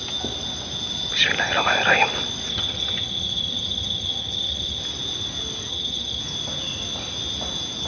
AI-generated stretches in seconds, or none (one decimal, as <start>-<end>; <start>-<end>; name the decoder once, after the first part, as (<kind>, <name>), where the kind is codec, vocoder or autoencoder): 2.5-4.8 (vocoder, HiFi-GAN); 5.7-6.2